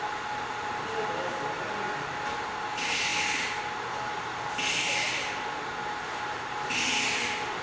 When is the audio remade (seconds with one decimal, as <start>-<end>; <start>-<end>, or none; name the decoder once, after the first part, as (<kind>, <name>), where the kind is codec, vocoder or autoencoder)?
none